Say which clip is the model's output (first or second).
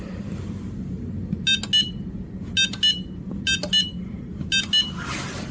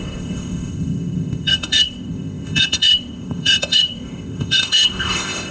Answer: second